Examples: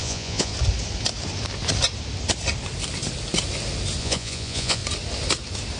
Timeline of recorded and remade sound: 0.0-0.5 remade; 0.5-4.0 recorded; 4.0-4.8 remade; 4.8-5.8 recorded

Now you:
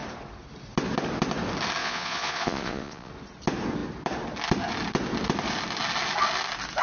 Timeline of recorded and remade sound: 0.0-1.8 recorded; 1.8-3.1 remade; 3.1-6.8 recorded

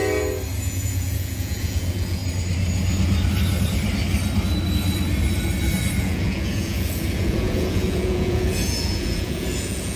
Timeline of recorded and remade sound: 0.0-0.6 recorded; 0.6-2.2 remade; 2.2-6.0 recorded; 6.0-10.0 remade

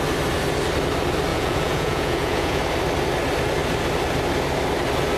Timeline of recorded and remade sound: 0.0-1.3 recorded; 1.3-2.6 remade; 2.6-5.2 recorded

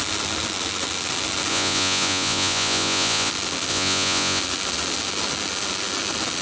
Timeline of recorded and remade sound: 0.0-1.5 recorded; 1.5-3.3 remade; 3.3-3.7 recorded; 3.7-4.4 remade; 4.4-6.4 recorded